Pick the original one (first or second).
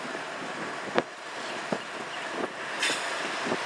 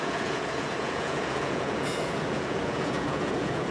first